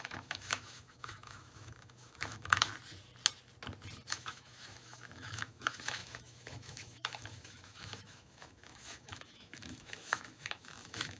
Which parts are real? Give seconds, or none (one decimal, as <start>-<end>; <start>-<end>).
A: 2.7-4.1